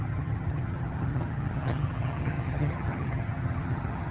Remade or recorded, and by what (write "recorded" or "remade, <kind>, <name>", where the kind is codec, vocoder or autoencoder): remade, vocoder, HiFi-GAN